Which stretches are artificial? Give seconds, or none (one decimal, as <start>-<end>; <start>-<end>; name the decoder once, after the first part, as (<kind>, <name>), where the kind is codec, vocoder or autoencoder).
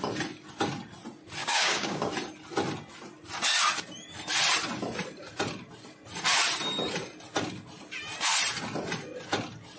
1.4-2.1 (codec, DAC)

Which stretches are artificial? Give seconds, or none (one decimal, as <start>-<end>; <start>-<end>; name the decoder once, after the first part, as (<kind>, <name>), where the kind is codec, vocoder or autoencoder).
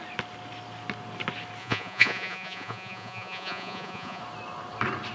1.6-4.2 (vocoder, Vocos)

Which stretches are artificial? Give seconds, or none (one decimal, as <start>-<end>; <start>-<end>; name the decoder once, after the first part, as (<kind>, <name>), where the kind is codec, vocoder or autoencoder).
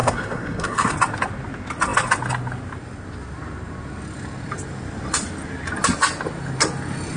0.0-0.9 (codec, SNAC)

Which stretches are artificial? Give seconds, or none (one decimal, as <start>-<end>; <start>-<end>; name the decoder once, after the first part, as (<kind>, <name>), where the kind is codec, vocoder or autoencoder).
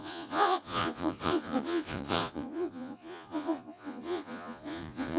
0.0-5.2 (vocoder, Vocos)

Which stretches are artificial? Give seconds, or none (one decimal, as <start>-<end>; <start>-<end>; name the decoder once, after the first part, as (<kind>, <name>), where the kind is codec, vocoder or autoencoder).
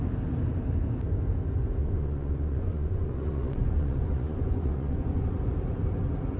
1.8-5.3 (vocoder, Vocos)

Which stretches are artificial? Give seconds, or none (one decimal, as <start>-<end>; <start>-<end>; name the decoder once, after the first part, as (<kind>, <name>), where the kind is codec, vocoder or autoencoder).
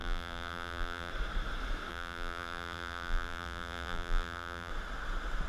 0.0-1.1 (vocoder, BigVGAN v2); 1.9-4.7